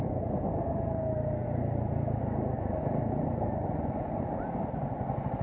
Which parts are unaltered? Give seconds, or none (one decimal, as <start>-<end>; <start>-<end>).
0.0-5.4